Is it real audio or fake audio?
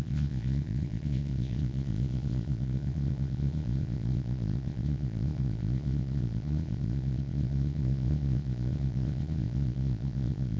fake